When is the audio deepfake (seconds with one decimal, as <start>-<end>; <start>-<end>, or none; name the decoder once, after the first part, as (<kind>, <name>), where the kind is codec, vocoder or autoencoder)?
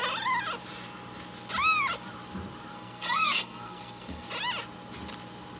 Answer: 2.7-4.3 (codec, SNAC)